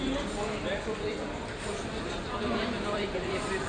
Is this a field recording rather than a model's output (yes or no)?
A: no